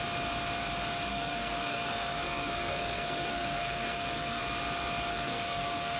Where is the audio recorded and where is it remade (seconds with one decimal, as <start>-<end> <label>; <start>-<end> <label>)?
0.0-1.1 recorded; 1.1-4.4 remade; 4.4-5.1 recorded; 5.1-6.0 remade